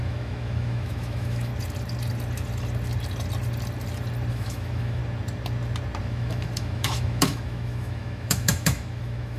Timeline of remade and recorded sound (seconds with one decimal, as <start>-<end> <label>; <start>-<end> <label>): 0.0-1.5 remade; 1.5-4.3 recorded; 4.3-5.0 remade; 5.0-6.0 recorded; 6.0-9.4 remade